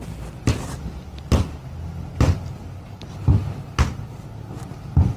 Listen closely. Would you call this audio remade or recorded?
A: recorded